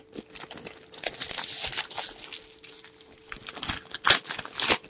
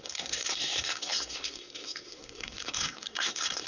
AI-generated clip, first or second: second